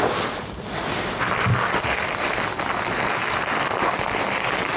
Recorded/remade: recorded